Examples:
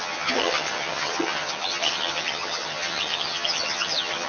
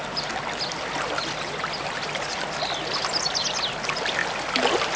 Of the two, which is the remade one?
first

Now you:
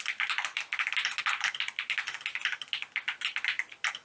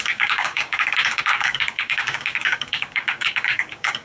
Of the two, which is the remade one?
second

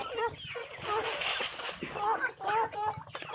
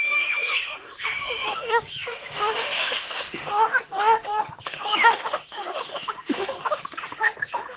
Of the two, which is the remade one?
second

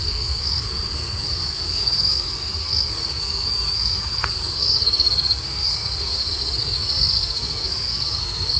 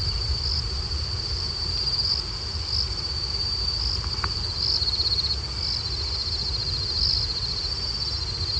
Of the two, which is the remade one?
first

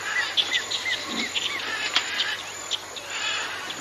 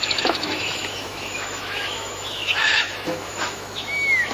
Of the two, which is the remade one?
second